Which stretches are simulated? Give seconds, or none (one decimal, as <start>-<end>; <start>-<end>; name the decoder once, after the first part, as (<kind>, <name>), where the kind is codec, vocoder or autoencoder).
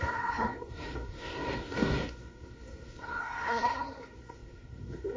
0.0-5.2 (codec, SNAC)